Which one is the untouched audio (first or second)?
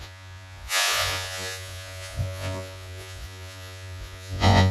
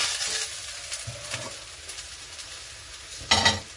second